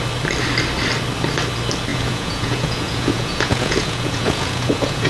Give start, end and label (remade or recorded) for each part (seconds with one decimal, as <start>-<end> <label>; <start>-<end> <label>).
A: 0.0-1.9 recorded; 1.9-5.1 remade